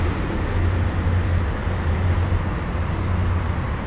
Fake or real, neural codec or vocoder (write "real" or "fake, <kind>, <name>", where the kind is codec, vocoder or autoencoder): real